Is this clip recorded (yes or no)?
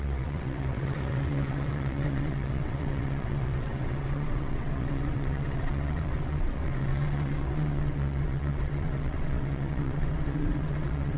no